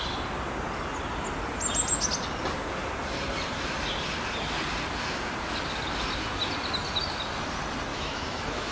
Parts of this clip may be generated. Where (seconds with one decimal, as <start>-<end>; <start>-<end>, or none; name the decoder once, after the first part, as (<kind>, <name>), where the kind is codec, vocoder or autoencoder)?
7.9-8.7 (autoencoder, DAC-VAE)